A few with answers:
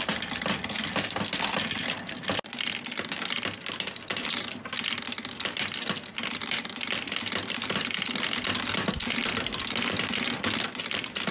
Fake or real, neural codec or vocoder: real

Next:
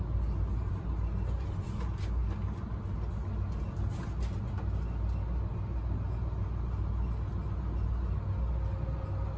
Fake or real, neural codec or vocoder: real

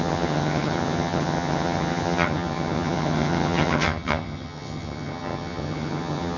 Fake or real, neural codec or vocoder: fake, vocoder, HiFi-GAN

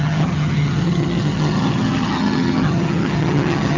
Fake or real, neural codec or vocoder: fake, vocoder, HiFi-GAN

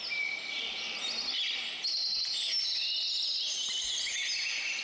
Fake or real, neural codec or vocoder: real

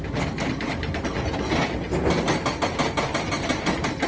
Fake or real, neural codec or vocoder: real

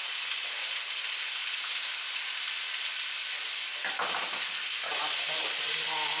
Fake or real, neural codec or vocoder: real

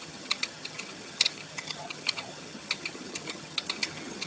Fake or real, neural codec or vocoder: fake, vocoder, HiFi-GAN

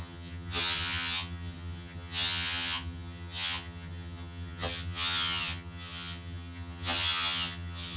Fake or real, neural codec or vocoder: fake, vocoder, HiFi-GAN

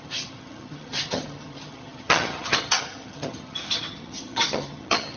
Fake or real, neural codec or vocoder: fake, vocoder, HiFi-GAN